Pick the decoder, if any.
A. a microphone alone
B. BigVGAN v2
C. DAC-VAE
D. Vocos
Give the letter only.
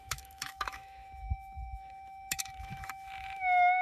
C